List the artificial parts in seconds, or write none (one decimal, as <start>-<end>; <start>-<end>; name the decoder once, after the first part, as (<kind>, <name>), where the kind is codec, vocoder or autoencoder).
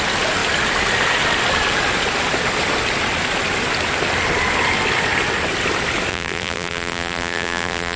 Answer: 6.1-8.0 (vocoder, BigVGAN v2)